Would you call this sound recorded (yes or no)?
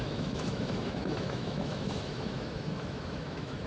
no